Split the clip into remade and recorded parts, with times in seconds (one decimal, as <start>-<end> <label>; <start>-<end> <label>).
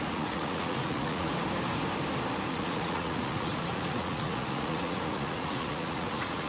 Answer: 0.0-1.3 remade; 1.3-2.5 recorded; 2.5-6.5 remade